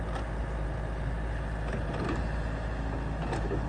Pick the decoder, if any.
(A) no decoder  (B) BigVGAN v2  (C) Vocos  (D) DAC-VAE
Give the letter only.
A